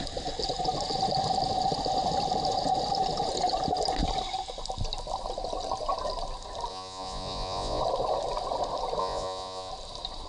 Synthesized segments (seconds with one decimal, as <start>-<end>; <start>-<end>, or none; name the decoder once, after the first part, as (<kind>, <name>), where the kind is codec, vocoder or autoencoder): 6.7-7.8 (vocoder, Vocos); 9.0-9.7